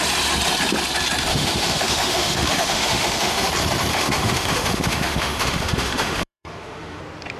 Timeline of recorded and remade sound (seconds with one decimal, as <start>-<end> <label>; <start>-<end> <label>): 0.0-1.3 recorded; 1.3-3.5 remade; 3.5-3.9 recorded; 3.9-7.0 remade; 7.0-7.4 recorded

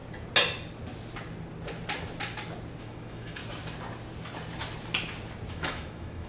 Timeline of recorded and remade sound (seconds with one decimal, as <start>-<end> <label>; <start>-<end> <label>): 0.0-2.8 recorded; 2.8-3.4 remade; 3.4-5.5 recorded; 5.5-6.3 remade

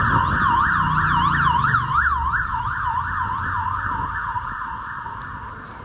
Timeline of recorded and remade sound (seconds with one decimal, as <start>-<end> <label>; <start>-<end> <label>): 0.0-2.5 recorded; 2.5-3.0 remade; 3.0-5.8 recorded

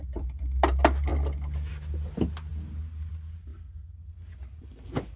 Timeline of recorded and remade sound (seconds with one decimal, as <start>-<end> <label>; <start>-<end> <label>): 0.0-5.2 recorded

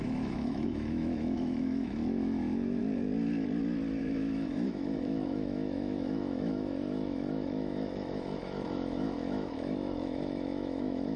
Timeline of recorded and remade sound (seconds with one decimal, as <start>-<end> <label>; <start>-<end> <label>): 0.0-2.8 remade; 2.8-4.0 recorded; 4.0-11.2 remade

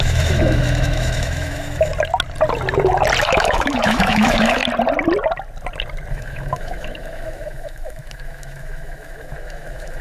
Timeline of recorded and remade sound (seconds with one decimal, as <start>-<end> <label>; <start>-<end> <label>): 0.0-1.9 remade; 1.9-3.2 recorded; 3.2-4.6 remade; 4.6-6.1 recorded; 6.1-10.0 remade